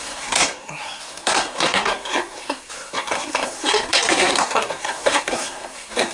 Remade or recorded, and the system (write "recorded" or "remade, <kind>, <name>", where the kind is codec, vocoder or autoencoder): remade, codec, SNAC